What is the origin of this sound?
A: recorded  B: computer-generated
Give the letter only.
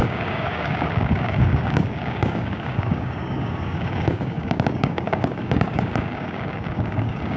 B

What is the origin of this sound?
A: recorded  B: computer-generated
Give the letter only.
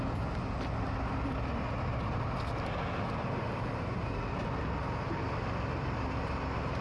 A